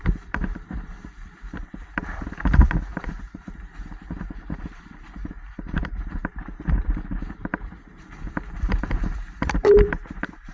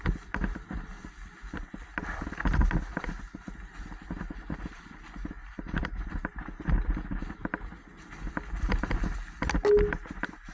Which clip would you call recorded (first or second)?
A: second